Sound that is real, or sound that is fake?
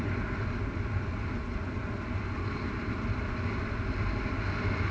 real